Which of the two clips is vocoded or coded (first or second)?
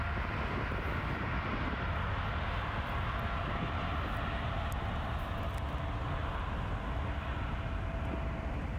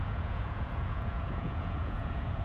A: second